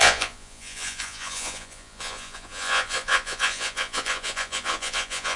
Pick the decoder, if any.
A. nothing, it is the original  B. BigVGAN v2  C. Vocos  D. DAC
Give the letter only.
C